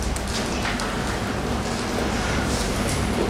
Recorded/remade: recorded